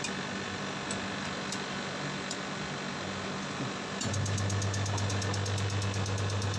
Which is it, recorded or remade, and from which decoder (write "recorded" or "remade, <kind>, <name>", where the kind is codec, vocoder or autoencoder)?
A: recorded